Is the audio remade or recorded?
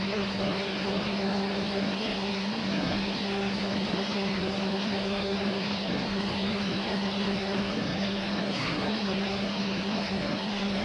remade